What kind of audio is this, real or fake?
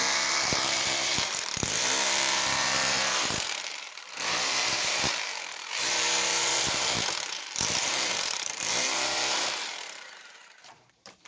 fake